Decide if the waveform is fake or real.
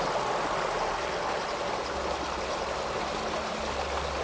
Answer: real